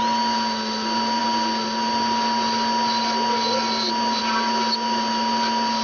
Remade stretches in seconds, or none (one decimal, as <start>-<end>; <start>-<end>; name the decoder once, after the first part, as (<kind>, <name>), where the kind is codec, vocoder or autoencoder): none